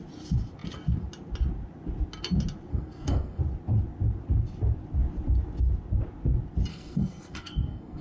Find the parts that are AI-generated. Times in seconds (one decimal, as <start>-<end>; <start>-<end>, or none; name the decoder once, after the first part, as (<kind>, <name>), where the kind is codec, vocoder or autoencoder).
2.7-3.4 (codec, SNAC); 6.7-8.0